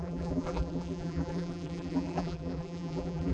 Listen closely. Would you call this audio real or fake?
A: fake